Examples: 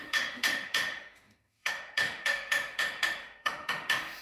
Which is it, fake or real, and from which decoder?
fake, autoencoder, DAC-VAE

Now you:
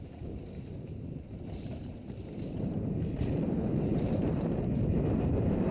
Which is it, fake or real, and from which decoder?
fake, vocoder, BigVGAN v2